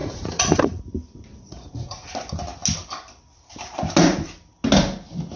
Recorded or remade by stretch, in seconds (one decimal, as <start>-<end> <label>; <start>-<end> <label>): 0.0-0.8 remade; 0.8-1.3 recorded; 1.3-2.1 remade; 2.1-5.4 recorded